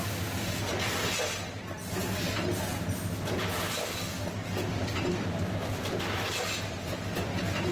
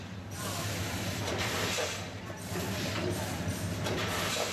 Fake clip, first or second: second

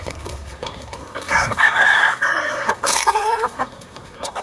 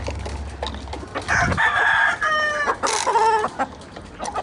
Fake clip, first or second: first